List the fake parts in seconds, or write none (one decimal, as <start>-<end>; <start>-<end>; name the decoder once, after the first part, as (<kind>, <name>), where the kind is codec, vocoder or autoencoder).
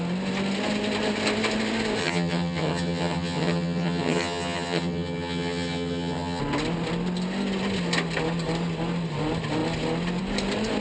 2.0-6.4 (vocoder, HiFi-GAN)